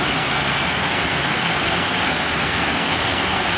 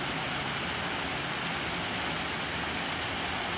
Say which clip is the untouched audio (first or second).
second